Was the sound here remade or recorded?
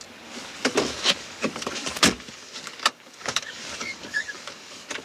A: remade